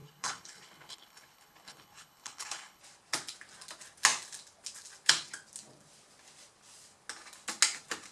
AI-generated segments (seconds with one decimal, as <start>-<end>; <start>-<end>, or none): 0.0-2.8